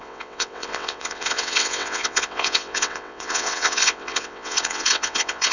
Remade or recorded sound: remade